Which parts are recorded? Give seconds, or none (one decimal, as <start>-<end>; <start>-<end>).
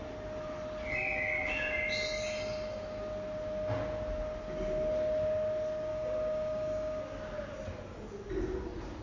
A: 0.0-5.9; 7.0-9.0